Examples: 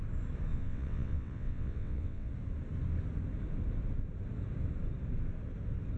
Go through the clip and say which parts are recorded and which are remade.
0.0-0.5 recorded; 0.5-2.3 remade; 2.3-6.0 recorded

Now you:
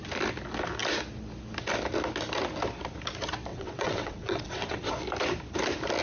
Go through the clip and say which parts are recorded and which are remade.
0.0-3.5 recorded; 3.5-4.9 remade; 4.9-6.0 recorded

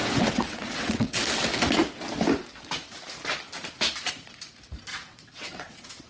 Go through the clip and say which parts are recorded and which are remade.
0.0-1.2 remade; 1.2-4.9 recorded; 4.9-6.1 remade

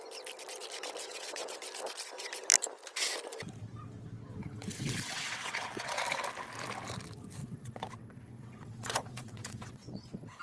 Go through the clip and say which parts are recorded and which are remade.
0.0-1.0 recorded; 1.0-1.6 remade; 1.6-4.4 recorded; 4.4-6.0 remade; 6.0-7.4 recorded; 7.4-10.4 remade

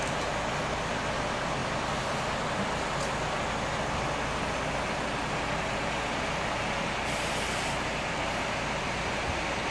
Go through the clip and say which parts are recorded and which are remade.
0.0-9.7 recorded

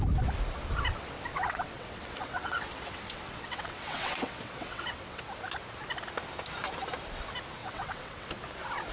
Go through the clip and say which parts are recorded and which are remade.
0.0-1.3 recorded; 1.3-5.2 remade; 5.2-7.6 recorded; 7.6-8.3 remade; 8.3-8.9 recorded

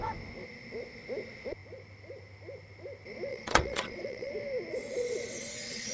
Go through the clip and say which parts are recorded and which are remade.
0.0-3.3 recorded; 3.3-4.3 remade; 4.3-4.8 recorded; 4.8-5.9 remade